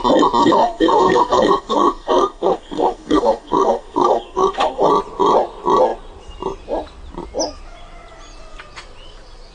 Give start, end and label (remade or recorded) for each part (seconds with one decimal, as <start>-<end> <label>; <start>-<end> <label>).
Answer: 0.0-0.4 recorded; 0.4-4.9 remade; 4.9-9.5 recorded

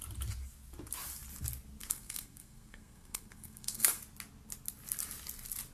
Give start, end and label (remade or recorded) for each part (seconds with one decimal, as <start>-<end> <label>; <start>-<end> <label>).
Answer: 0.0-1.8 recorded; 1.8-4.0 remade; 4.0-5.7 recorded

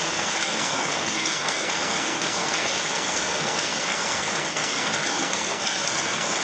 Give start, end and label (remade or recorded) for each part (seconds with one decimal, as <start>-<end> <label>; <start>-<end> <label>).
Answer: 0.0-6.4 remade